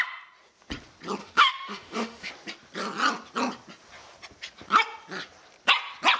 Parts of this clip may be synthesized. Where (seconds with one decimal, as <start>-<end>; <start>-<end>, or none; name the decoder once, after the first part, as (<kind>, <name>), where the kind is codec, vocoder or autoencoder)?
1.2-2.3 (autoencoder, DAC-VAE)